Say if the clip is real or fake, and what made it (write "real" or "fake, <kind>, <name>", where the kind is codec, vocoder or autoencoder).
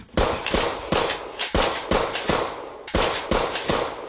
real